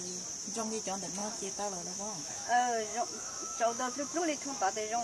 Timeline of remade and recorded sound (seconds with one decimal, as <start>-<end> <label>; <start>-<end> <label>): 0.0-1.2 recorded; 1.2-4.2 remade; 4.2-5.0 recorded